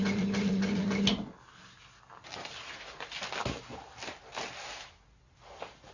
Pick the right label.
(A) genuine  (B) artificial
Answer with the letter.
A